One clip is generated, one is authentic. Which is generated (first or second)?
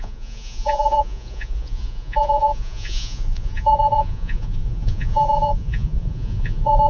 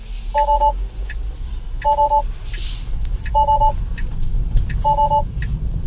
first